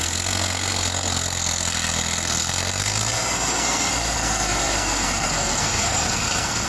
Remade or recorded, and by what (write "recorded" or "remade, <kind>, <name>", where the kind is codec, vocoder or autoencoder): remade, codec, SNAC